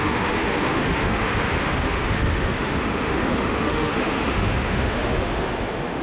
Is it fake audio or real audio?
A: fake